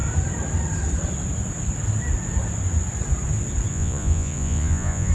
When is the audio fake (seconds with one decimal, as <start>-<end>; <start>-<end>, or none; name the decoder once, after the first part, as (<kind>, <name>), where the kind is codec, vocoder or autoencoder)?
3.7-5.1 (vocoder, Vocos)